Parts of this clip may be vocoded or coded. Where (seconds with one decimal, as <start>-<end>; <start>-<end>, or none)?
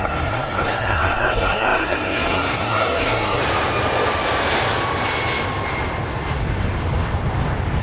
0.0-3.4